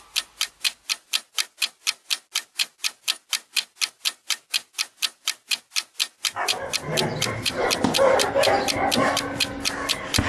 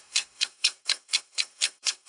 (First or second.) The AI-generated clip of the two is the second